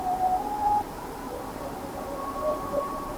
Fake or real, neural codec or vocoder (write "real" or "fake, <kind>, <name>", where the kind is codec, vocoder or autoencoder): fake, vocoder, BigVGAN v2